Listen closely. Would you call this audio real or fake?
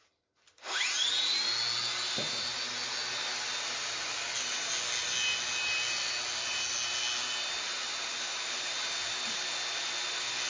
real